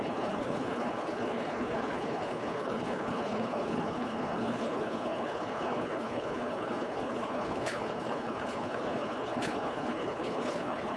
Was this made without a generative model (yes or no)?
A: no